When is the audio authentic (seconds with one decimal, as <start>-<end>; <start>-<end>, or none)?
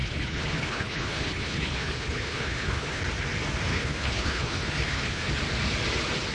3.0-3.7; 5.3-6.3